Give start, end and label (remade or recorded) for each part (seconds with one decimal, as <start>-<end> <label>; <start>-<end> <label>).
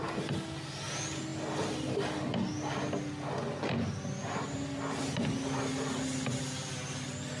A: 0.0-7.4 recorded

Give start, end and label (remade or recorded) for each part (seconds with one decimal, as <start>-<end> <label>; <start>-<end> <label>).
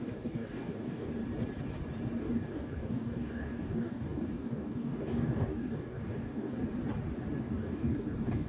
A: 0.0-1.2 remade; 1.2-2.2 recorded; 2.2-6.6 remade; 6.6-7.4 recorded; 7.4-8.5 remade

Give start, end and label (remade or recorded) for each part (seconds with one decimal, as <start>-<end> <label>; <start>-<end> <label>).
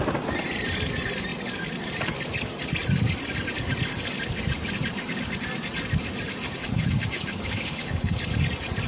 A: 0.0-6.6 recorded; 6.6-8.1 remade; 8.1-8.9 recorded